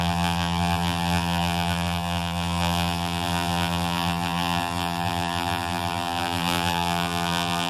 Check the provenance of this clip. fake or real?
fake